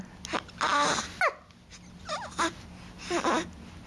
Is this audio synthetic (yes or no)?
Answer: no